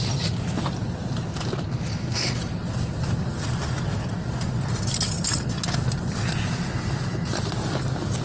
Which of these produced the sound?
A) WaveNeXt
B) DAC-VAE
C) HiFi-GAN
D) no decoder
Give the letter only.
D